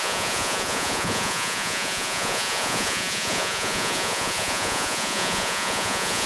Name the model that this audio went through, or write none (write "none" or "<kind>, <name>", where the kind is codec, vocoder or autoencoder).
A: vocoder, Vocos